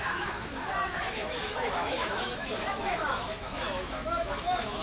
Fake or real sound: fake